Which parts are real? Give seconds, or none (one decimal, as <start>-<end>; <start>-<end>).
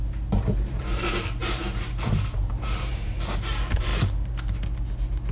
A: 3.9-5.3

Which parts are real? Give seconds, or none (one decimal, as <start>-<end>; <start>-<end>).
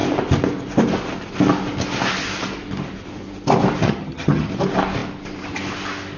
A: 0.0-3.8; 4.5-6.2